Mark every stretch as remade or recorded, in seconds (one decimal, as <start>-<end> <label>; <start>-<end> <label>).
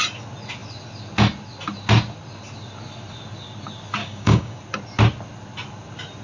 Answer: 0.0-4.0 recorded; 4.0-4.6 remade; 4.6-6.2 recorded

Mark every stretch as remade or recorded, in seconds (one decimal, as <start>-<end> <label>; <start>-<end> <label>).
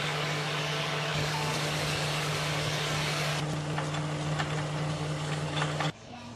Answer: 0.0-3.3 remade; 3.3-4.9 recorded; 4.9-6.4 remade